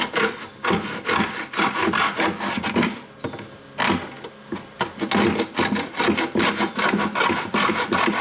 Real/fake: real